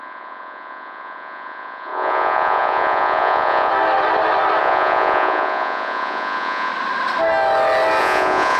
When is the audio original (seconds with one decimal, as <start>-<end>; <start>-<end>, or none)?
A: 3.7-4.6; 6.7-8.0